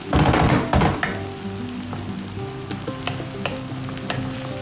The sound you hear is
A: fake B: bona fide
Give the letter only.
B